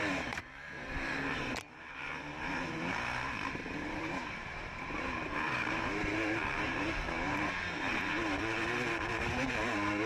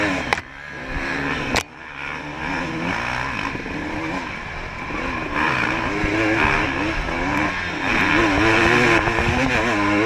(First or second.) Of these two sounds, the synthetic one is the first